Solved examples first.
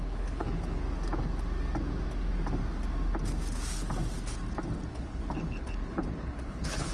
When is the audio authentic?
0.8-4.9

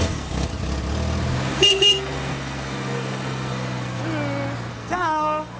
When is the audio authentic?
0.5-1.5; 4.0-4.7

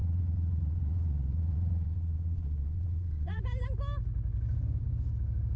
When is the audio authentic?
3.4-5.6

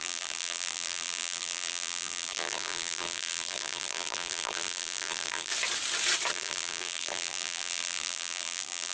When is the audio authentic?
5.5-6.3

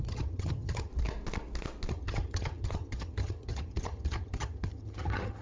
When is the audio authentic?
0.9-1.9